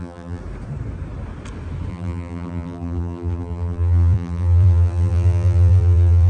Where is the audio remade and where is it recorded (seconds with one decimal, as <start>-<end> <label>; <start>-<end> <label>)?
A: 0.0-0.4 remade; 0.4-1.9 recorded; 1.9-6.3 remade